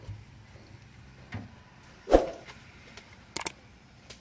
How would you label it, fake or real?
real